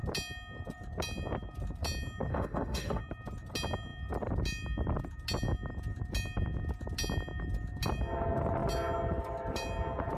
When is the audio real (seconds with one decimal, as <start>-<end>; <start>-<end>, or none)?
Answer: 0.0-2.3; 3.0-10.2